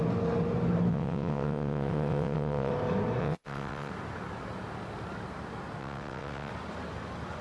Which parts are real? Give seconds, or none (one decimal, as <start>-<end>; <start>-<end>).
0.0-0.9; 2.7-3.2; 3.9-5.8; 6.5-7.4